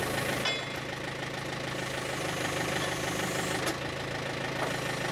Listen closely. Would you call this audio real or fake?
real